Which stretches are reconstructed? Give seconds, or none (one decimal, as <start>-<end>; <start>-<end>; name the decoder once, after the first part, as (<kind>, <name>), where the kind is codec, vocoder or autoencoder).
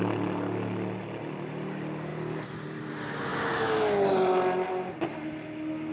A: none